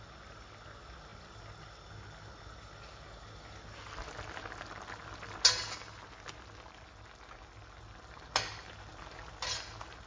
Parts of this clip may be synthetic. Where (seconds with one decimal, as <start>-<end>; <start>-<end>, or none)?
none